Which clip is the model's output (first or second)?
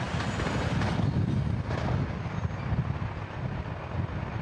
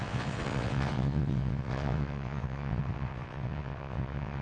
second